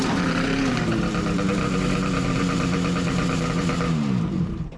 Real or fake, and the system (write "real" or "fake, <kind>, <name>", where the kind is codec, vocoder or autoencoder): fake, vocoder, BigVGAN v2